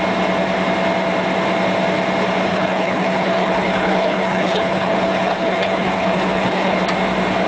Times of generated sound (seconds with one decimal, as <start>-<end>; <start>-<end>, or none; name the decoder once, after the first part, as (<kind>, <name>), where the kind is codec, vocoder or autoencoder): 2.5-6.8 (codec, HILCodec)